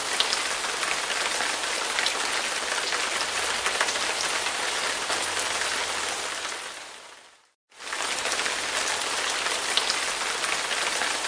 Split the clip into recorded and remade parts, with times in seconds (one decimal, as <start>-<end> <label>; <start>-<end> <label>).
0.0-11.3 recorded